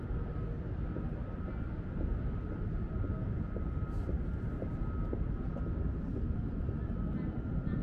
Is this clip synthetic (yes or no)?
no